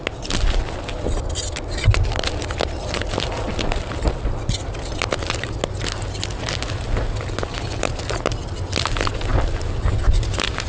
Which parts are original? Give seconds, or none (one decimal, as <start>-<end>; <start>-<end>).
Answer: 0.0-10.7